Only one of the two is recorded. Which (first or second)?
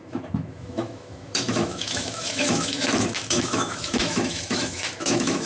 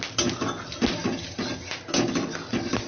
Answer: second